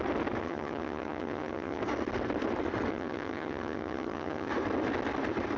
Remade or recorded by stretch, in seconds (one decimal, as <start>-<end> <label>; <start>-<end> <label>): 0.0-0.4 recorded; 0.4-1.8 remade; 1.8-2.9 recorded; 2.9-4.5 remade; 4.5-5.6 recorded